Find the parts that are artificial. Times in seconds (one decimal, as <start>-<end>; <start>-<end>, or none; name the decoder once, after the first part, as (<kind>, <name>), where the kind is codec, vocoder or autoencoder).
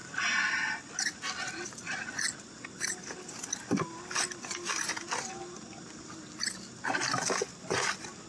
none